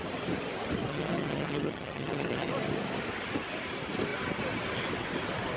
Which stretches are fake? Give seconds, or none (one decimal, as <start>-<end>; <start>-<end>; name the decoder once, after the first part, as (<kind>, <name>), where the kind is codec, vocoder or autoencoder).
0.9-2.5 (vocoder, HiFi-GAN)